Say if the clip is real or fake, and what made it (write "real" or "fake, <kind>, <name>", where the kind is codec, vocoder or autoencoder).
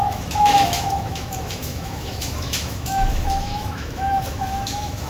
fake, autoencoder, DAC-VAE